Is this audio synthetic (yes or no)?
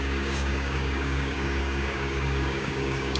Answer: yes